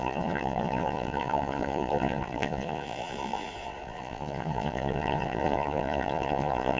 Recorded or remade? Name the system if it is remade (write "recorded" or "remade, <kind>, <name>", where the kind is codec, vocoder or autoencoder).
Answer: remade, vocoder, Vocos